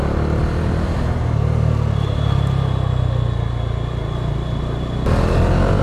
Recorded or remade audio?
recorded